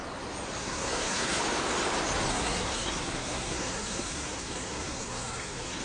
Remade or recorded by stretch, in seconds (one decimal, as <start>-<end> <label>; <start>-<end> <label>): 0.0-0.6 recorded; 0.6-1.4 remade; 1.4-2.3 recorded; 2.3-5.8 remade